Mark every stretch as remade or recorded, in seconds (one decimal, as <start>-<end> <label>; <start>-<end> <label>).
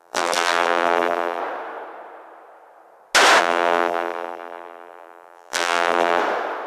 0.0-1.4 remade; 1.4-3.4 recorded; 3.4-6.2 remade; 6.2-6.7 recorded